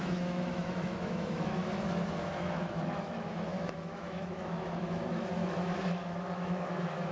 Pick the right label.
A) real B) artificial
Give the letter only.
B